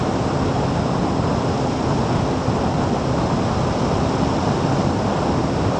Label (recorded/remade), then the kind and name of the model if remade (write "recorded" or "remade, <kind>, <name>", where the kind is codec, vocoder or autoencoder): recorded